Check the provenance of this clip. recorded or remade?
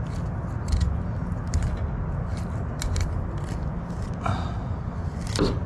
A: recorded